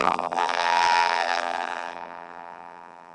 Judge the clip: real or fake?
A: fake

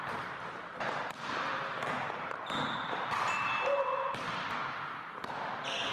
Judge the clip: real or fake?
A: fake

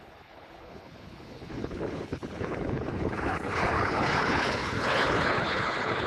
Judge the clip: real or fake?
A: fake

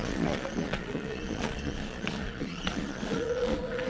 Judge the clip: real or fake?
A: fake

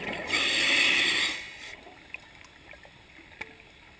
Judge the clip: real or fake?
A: real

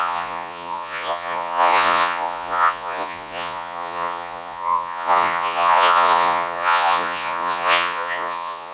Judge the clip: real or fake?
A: fake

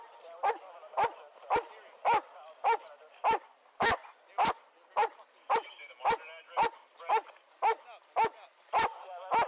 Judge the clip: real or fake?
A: real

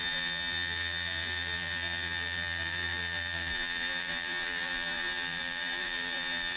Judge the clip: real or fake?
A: fake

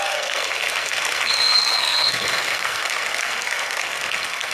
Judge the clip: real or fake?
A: fake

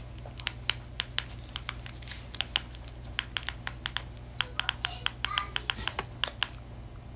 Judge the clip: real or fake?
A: real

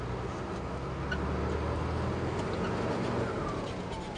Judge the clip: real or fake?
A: real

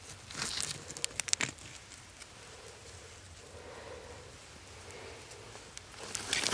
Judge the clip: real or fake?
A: real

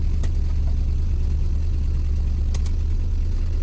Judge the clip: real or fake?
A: real